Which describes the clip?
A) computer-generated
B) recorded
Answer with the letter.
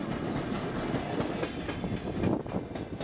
B